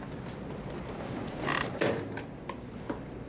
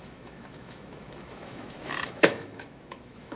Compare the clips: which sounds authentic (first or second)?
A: first